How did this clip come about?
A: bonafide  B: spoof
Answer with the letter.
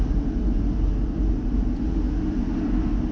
A